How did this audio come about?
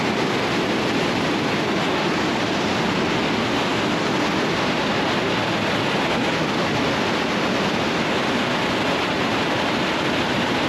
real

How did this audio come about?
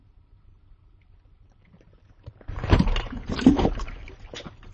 fake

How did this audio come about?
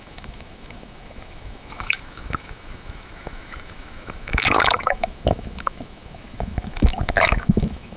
fake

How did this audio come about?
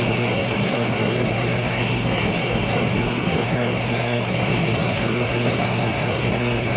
fake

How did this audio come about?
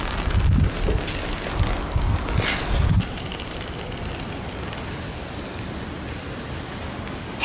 real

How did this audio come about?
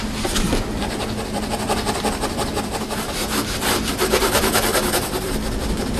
fake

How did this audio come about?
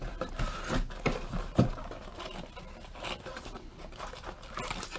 real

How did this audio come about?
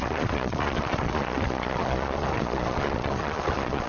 fake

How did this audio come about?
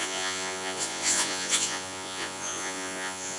fake